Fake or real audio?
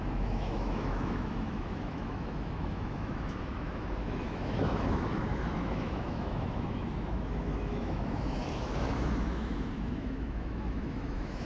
fake